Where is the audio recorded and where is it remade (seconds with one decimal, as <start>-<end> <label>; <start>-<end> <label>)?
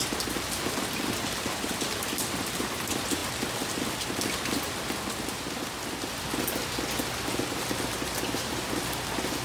0.0-3.2 remade; 3.2-7.6 recorded; 7.6-9.4 remade